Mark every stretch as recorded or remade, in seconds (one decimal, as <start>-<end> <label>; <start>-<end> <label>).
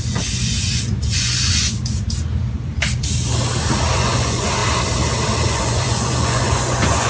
0.0-1.8 remade; 1.8-3.9 recorded; 3.9-4.6 remade; 4.6-5.5 recorded; 5.5-7.1 remade